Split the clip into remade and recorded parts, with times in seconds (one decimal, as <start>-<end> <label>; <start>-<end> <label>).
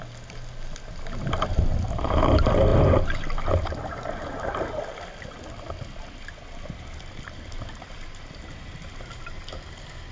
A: 0.0-10.1 recorded